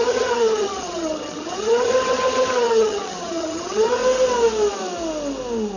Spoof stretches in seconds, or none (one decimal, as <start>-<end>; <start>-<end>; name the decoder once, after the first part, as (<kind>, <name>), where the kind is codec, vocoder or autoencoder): 0.0-4.0 (vocoder, HiFi-GAN)